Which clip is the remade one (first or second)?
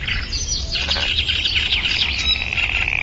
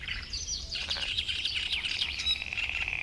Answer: second